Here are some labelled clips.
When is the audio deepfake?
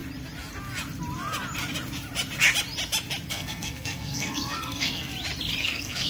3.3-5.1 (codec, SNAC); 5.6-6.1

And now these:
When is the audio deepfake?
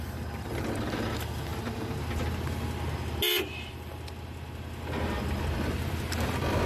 none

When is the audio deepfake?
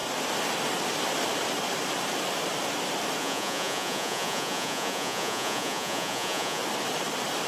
3.2-6.6 (vocoder, Vocos)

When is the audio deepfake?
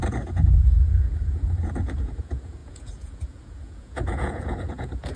0.0-5.2 (vocoder, Vocos)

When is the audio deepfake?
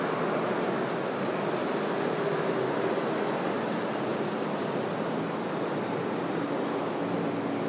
none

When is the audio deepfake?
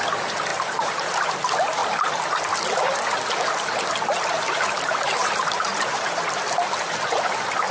0.5-1.3 (vocoder, BigVGAN v2); 5.2-6.2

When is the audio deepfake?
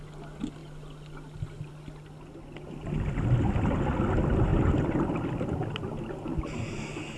4.5-5.1 (vocoder, BigVGAN v2)